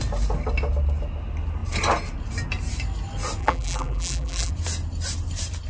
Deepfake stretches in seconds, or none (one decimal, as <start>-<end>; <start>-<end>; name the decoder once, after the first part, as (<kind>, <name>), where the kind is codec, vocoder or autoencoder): 3.4-4.5 (vocoder, BigVGAN v2)